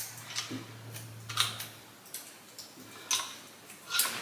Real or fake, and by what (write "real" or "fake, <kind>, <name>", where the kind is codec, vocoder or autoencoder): real